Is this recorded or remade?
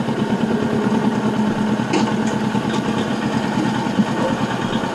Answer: recorded